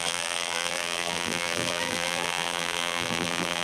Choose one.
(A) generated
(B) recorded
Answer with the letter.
A